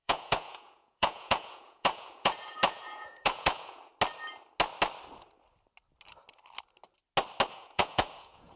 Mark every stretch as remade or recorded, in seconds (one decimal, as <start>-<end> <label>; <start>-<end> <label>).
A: 0.0-3.9 remade; 3.9-7.5 recorded; 7.5-8.6 remade